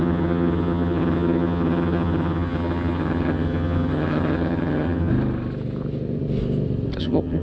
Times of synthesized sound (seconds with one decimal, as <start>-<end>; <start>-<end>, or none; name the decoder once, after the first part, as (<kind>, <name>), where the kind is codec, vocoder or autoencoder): 0.0-5.1 (vocoder, HiFi-GAN); 7.0-7.4